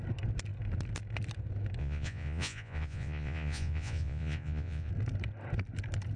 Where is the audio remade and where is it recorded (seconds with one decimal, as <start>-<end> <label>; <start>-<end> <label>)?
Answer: 0.0-1.8 recorded; 1.8-4.9 remade; 4.9-6.2 recorded